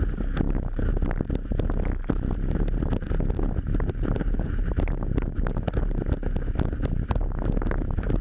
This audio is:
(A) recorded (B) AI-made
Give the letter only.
A